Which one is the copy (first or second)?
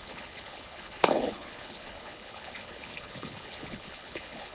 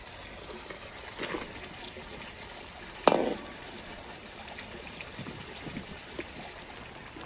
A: first